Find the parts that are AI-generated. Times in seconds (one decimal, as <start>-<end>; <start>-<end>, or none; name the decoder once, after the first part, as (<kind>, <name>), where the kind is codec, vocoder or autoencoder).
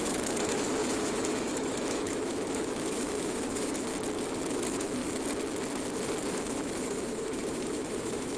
0.0-3.9 (autoencoder, DAC-VAE); 4.5-5.0; 6.3-8.4